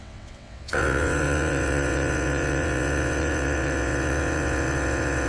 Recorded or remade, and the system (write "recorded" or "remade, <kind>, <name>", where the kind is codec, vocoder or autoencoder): remade, vocoder, WaveNeXt